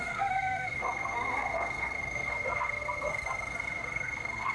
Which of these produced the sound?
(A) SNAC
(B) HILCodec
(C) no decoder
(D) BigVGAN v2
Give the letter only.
A